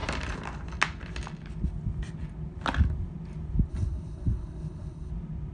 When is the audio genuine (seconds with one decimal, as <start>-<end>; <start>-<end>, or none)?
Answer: 0.0-3.7; 5.1-5.5